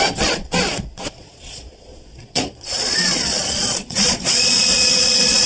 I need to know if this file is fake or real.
fake